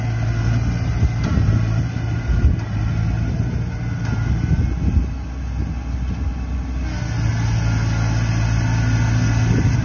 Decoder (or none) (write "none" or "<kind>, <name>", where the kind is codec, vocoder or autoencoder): none